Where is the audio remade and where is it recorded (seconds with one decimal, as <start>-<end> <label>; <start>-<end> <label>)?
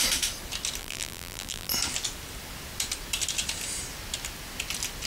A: 0.0-0.8 recorded; 0.8-1.7 remade; 1.7-5.1 recorded